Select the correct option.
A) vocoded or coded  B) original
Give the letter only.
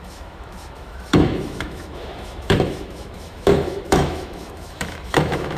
A